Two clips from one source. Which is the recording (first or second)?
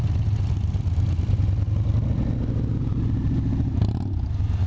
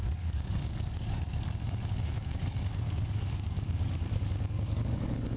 first